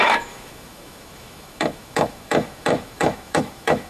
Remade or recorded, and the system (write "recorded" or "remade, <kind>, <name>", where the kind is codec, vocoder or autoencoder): remade, autoencoder, DAC-VAE